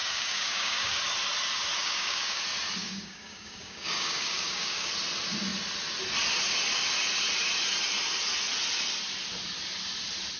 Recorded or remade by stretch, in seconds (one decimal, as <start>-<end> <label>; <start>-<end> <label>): 0.0-1.0 remade; 1.0-1.8 recorded; 1.8-2.4 remade; 2.4-2.8 recorded; 2.8-4.9 remade; 4.9-10.4 recorded